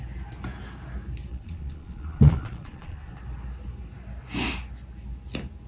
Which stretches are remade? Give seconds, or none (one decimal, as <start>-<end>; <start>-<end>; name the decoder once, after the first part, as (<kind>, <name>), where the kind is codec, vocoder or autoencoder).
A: 1.3-3.1 (vocoder, Vocos)